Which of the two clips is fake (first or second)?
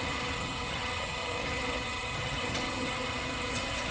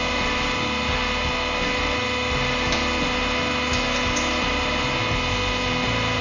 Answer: first